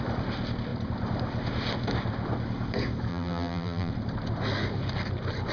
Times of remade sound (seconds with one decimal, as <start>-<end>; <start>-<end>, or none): 3.1-3.9